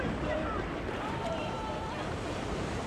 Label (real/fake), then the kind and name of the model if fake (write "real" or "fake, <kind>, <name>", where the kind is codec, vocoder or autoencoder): fake, vocoder, BigVGAN v2